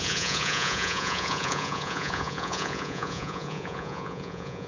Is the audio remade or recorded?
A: remade